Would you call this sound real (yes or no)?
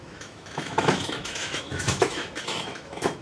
no